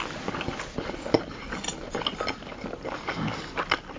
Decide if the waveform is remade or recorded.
recorded